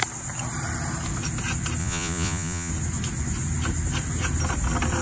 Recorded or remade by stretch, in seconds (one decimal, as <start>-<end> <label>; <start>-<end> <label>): 0.0-1.8 recorded; 1.8-2.7 remade; 2.7-5.0 recorded